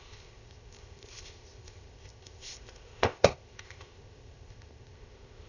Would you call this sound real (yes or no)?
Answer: no